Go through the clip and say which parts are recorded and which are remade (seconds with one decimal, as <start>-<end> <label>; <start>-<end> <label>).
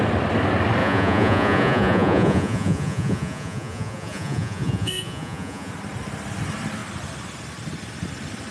0.0-0.8 recorded; 0.8-5.7 remade; 5.7-8.5 recorded